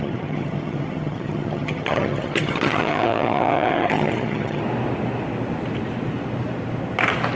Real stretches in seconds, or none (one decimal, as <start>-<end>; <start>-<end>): 4.6-7.4